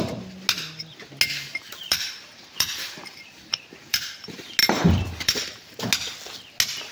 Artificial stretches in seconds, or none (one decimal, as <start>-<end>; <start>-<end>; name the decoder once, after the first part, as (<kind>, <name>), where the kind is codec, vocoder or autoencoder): 1.5-4.0 (vocoder, BigVGAN v2); 4.6-5.9